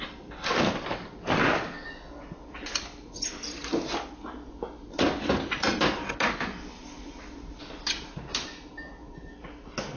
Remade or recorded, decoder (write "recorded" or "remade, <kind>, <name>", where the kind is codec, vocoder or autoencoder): recorded